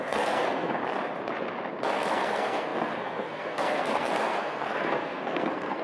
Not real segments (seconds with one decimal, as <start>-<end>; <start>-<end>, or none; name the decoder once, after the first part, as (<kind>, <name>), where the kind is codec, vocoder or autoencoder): 0.0-0.8 (codec, SNAC); 1.8-5.8